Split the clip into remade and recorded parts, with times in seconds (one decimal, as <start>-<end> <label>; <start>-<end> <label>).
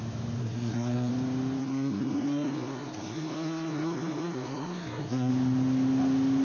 0.0-0.4 recorded; 0.4-1.1 remade; 1.1-1.6 recorded; 1.6-5.3 remade; 5.3-6.4 recorded